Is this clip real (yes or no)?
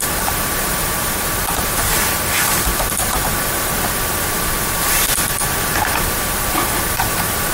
no